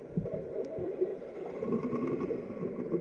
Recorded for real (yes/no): no